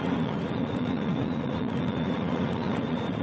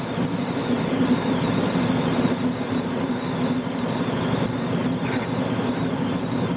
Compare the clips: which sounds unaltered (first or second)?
second